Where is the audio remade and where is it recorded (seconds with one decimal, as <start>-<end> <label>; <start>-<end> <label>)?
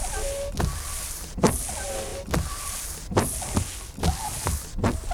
0.0-5.1 recorded